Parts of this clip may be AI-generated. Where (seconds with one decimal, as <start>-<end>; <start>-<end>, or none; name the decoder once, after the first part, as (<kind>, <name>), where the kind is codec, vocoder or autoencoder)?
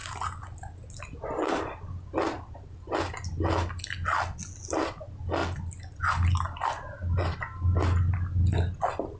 none